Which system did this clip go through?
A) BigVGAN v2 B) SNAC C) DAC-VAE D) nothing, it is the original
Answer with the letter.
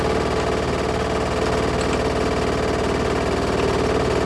D